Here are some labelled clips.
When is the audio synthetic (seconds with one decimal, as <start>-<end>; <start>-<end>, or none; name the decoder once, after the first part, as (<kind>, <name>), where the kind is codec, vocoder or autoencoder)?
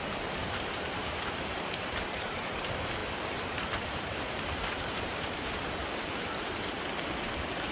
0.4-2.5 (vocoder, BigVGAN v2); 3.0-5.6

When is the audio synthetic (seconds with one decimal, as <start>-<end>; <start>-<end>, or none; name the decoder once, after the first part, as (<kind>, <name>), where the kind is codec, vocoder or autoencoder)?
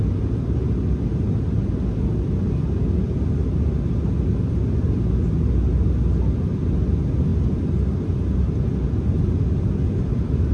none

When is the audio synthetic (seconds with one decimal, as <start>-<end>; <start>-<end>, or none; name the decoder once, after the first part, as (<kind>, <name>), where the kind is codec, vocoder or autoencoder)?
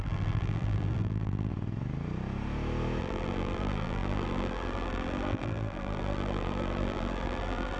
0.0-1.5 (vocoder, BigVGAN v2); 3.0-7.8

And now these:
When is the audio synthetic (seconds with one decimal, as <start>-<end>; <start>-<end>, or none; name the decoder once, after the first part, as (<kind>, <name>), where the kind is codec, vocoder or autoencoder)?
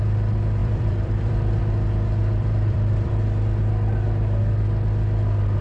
0.6-1.6 (vocoder, BigVGAN v2); 2.2-3.1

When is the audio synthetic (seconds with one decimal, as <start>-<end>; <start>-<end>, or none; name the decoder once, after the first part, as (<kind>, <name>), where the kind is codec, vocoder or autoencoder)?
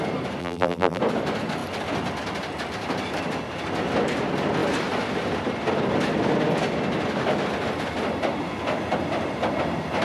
0.4-1.0 (vocoder, BigVGAN v2)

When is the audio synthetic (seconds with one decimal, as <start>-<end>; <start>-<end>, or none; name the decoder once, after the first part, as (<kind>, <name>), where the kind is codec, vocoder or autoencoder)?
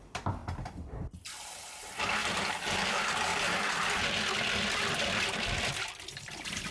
0.0-0.4 (vocoder, BigVGAN v2); 1.7-2.2; 2.9-3.3; 6.1-6.7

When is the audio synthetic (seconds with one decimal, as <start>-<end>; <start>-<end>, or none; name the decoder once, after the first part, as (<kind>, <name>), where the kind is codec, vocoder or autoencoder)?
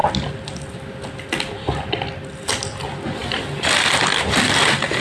3.2-4.6 (vocoder, BigVGAN v2)